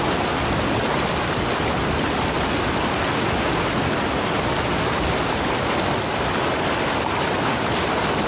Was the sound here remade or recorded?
recorded